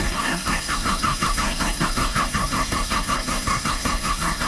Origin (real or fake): fake